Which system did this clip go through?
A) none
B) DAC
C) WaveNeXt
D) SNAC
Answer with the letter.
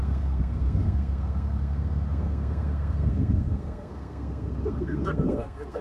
D